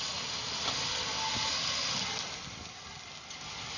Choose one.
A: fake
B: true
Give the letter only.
B